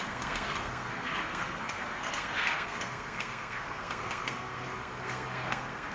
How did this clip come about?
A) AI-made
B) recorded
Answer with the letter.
A